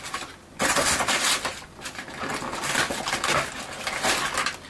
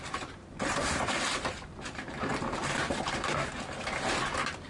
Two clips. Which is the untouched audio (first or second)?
first